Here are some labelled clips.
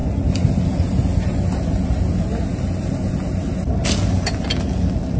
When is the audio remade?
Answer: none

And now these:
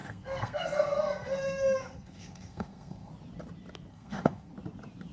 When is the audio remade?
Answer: 0.0-3.1 (codec, SNAC); 3.9-4.5

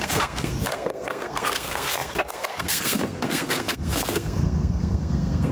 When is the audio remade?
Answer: 0.0-5.5 (codec, SNAC)

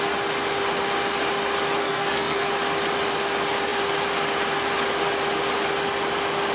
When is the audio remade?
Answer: 1.8-2.5 (codec, SNAC)

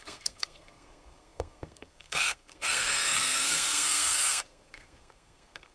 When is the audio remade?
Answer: 0.0-5.7 (codec, SNAC)